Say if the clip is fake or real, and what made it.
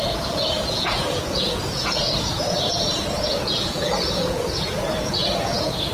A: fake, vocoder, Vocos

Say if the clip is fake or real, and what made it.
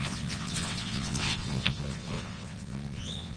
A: fake, vocoder, WaveNeXt